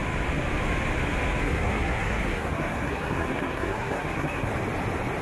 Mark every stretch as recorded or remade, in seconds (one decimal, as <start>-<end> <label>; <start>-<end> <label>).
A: 0.0-1.4 recorded; 1.4-4.5 remade; 4.5-5.2 recorded